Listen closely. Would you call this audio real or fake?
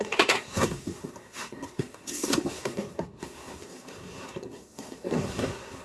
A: fake